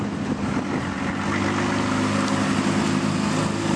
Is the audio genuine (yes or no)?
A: yes